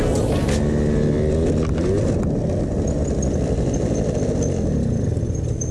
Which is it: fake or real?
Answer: real